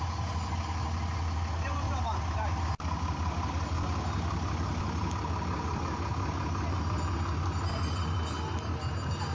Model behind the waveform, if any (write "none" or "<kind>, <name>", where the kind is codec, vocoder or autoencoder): none